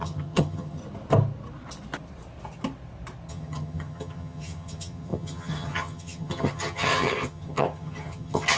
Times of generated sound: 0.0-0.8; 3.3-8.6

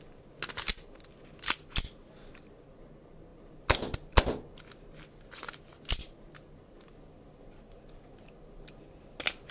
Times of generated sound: none

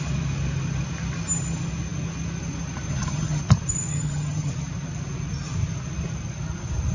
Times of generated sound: 2.9-3.4; 3.9-4.5

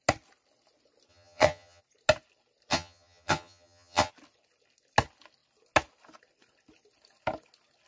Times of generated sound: 1.1-1.8; 2.7-4.1

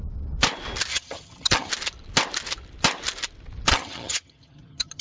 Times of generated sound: 0.9-1.7; 3.7-5.0